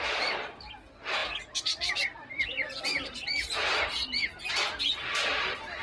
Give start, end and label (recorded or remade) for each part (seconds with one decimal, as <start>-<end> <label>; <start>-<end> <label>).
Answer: 0.0-5.8 recorded

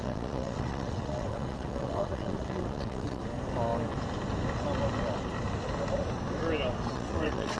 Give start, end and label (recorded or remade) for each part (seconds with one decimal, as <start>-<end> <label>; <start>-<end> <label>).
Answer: 0.0-3.2 remade; 3.2-6.9 recorded; 6.9-7.6 remade

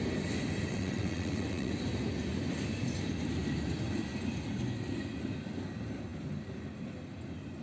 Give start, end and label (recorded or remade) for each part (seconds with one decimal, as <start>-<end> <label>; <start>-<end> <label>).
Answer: 0.0-0.7 recorded; 0.7-1.7 remade; 1.7-7.6 recorded

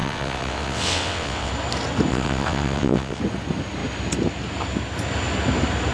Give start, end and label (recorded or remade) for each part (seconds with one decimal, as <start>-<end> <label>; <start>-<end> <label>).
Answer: 0.0-1.5 remade; 1.5-2.1 recorded; 2.1-3.2 remade; 3.2-5.9 recorded

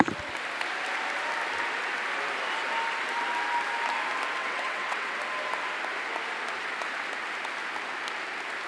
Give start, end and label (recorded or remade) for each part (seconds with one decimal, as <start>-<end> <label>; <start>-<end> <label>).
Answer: 0.0-4.4 recorded; 4.4-5.2 remade; 5.2-8.7 recorded